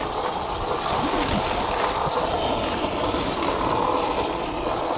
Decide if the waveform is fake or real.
real